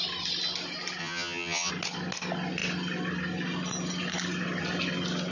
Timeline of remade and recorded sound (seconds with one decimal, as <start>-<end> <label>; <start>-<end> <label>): 0.0-1.0 recorded; 1.0-1.7 remade; 1.7-5.3 recorded